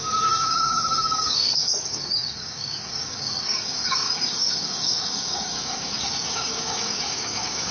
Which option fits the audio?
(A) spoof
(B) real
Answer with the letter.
A